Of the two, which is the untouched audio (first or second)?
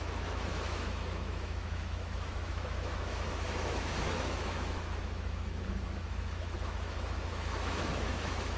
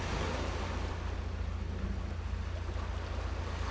second